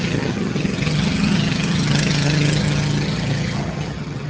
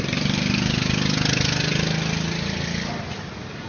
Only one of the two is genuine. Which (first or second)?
second